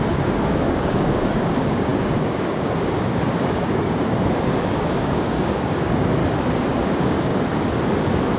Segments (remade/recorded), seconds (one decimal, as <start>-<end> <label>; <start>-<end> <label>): 0.0-6.2 remade; 6.2-6.8 recorded; 6.8-7.3 remade; 7.3-8.4 recorded